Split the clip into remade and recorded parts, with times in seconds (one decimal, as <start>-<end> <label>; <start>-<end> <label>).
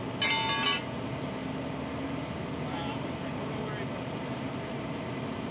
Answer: 0.0-5.5 recorded